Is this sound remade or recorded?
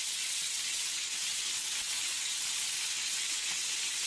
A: remade